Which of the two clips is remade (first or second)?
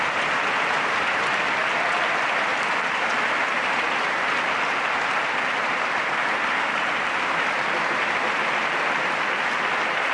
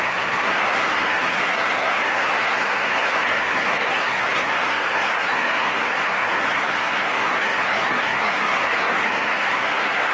second